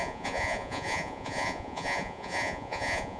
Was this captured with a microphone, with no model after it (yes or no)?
no